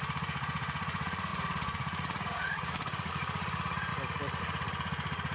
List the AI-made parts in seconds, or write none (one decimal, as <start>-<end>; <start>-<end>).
0.0-3.9; 4.4-5.3